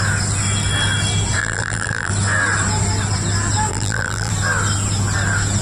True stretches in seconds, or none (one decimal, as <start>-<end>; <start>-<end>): 0.0-1.4; 2.1-3.7; 4.3-5.6